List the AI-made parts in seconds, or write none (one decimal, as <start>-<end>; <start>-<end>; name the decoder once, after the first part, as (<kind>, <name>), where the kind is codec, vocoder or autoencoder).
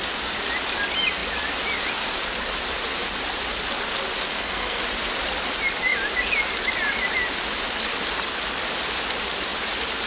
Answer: 4.3-4.8 (codec, SNAC)